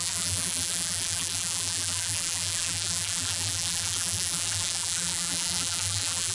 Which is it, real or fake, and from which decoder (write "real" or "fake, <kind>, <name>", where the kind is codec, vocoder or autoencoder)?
fake, vocoder, BigVGAN v2